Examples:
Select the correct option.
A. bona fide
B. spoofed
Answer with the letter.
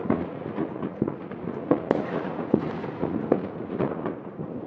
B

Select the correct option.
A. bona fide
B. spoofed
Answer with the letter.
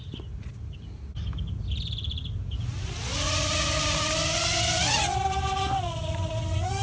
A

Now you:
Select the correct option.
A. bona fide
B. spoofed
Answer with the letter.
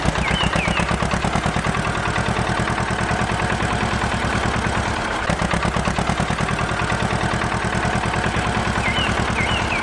A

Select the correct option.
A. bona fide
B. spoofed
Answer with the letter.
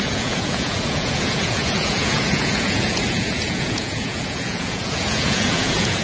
B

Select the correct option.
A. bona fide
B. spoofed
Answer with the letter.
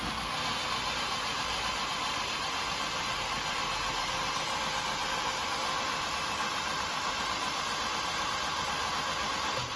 A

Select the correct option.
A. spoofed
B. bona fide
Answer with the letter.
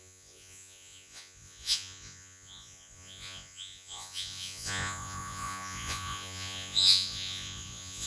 A